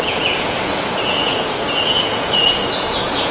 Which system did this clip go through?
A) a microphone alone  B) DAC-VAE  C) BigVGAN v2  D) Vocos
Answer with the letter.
D